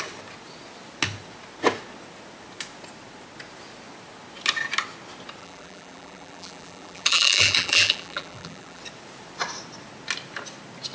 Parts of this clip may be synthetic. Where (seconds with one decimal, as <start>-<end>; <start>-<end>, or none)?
5.4-8.8

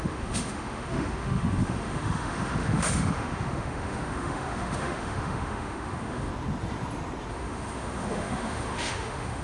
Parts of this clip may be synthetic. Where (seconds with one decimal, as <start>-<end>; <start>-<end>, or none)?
0.0-6.3; 7.3-9.4

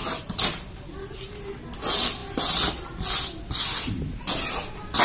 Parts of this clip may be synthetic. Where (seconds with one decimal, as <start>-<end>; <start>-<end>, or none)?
none

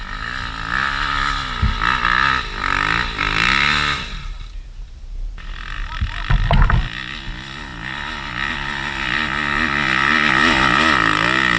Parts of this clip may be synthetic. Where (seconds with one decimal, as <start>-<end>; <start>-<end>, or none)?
none

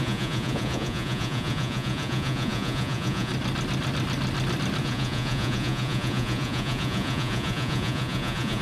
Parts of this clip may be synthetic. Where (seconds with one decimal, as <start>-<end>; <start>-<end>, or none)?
0.0-3.3; 4.8-8.6

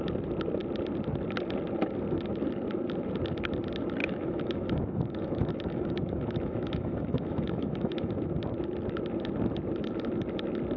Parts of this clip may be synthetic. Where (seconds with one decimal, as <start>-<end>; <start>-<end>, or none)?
4.0-8.1